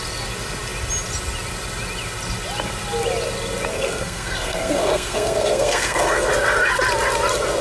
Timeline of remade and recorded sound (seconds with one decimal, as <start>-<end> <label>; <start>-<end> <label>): 0.0-3.7 recorded; 3.7-6.3 remade; 6.3-7.6 recorded